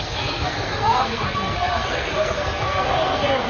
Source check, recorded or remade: remade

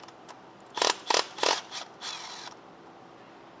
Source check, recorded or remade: recorded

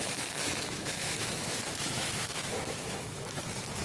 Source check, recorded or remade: remade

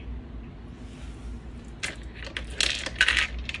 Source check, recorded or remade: recorded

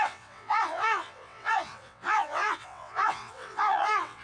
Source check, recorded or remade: remade